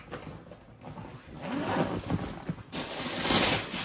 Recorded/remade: recorded